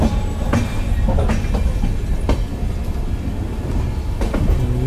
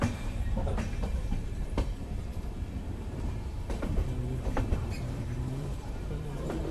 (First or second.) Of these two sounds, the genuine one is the first